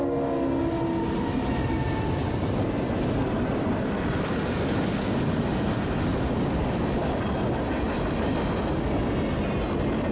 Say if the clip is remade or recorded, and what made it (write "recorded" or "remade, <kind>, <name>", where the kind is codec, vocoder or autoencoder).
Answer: recorded